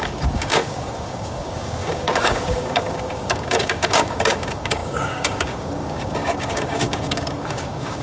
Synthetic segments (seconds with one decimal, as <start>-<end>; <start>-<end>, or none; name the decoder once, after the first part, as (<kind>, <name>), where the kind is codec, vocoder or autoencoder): 0.0-8.0 (codec, DAC)